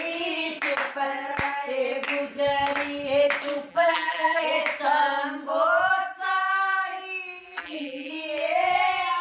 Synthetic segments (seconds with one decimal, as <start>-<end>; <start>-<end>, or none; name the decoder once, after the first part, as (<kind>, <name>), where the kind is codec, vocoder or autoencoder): 3.7-4.4 (vocoder, BigVGAN v2); 7.4-8.1